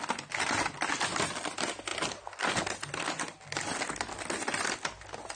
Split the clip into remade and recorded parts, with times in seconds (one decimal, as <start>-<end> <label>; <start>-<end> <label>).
0.0-5.4 recorded